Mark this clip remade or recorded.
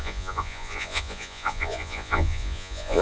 remade